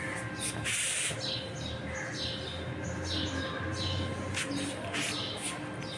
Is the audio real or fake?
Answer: real